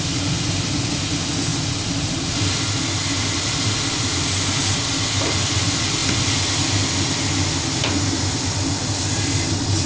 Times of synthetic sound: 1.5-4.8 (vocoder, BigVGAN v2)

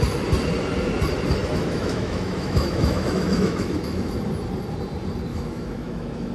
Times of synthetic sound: 1.4-4.1 (autoencoder, DAC-VAE); 5.3-6.3

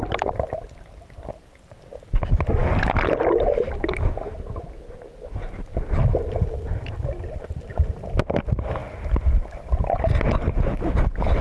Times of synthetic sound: none

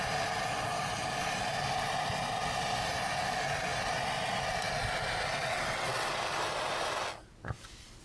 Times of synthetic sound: 5.4-6.1 (vocoder, WaveNeXt)

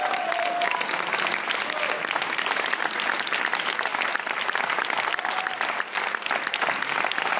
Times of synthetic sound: none

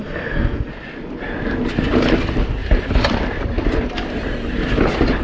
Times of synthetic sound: 0.0-0.7 (codec, SNAC)